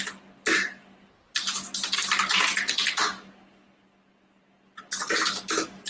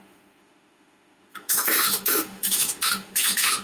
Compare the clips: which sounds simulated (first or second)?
second